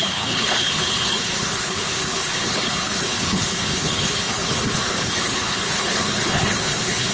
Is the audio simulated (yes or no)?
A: yes